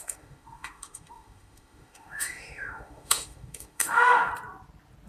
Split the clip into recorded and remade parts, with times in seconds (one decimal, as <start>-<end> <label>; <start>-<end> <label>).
0.0-4.3 remade; 4.3-5.1 recorded